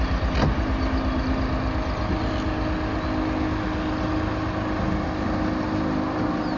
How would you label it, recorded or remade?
recorded